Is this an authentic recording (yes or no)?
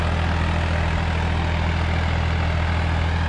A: yes